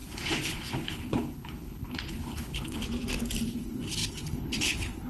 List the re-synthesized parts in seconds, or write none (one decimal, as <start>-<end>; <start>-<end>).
0.0-2.8; 3.5-5.1